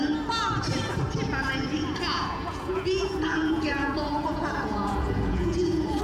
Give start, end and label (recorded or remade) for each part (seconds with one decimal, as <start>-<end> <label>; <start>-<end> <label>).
0.0-2.1 recorded; 2.1-6.0 remade